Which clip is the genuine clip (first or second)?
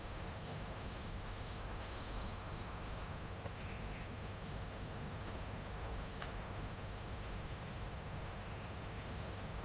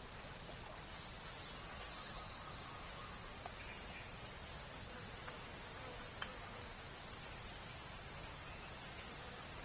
second